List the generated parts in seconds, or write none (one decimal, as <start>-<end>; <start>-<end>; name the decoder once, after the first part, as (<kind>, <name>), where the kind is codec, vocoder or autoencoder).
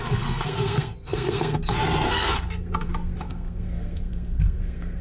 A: 0.0-5.0 (codec, SNAC)